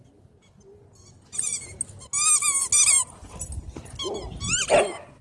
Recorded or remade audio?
recorded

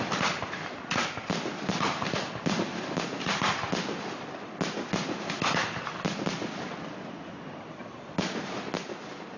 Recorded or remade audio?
recorded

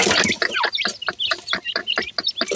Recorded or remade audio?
recorded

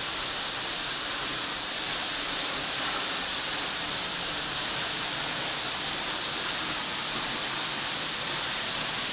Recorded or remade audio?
remade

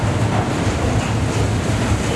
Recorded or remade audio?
recorded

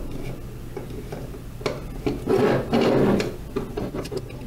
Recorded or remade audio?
recorded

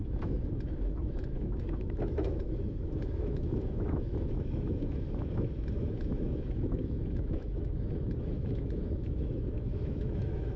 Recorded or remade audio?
remade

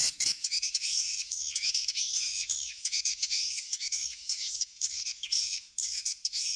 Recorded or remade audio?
remade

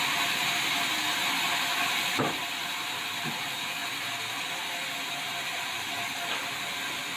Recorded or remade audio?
recorded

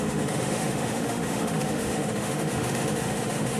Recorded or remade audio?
remade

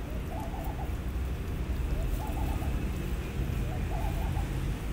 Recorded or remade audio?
recorded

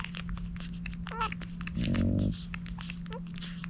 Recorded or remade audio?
recorded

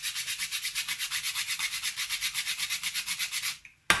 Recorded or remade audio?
recorded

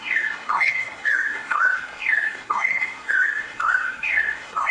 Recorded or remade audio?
remade